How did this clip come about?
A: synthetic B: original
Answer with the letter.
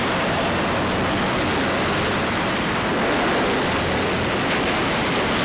B